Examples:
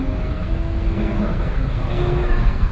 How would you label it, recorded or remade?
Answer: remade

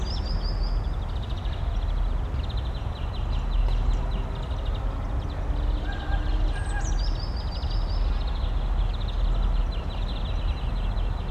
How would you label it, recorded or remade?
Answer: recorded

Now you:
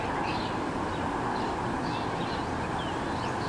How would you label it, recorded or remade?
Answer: recorded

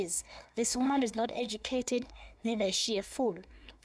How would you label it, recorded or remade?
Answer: remade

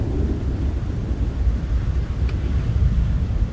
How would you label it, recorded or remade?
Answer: recorded